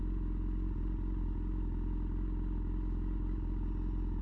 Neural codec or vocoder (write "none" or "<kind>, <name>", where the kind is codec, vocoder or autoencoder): none